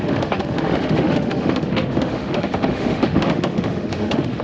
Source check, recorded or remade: remade